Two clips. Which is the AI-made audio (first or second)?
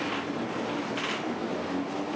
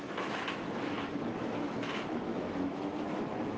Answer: second